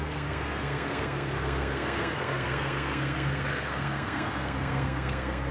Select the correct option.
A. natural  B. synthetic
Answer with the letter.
B